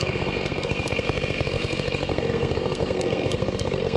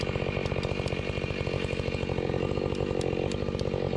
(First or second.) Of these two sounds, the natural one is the second